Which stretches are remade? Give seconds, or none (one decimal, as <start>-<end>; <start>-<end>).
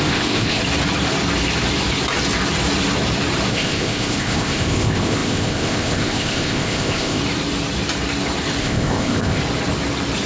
0.0-0.6; 3.5-7.2; 8.6-9.4